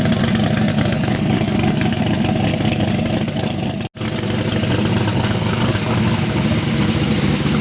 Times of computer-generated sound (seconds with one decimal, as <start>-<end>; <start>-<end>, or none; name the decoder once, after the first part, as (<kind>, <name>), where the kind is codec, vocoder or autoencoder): 0.7-2.0 (codec, DAC); 2.5-3.6; 5.1-6.0